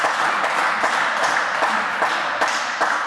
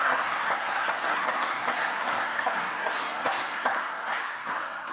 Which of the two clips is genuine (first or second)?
first